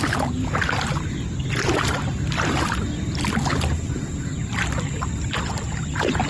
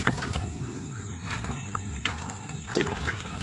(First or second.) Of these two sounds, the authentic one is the first